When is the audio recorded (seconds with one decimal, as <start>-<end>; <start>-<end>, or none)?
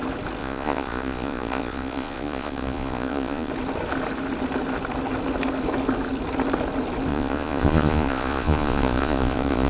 0.0-0.4; 3.5-7.1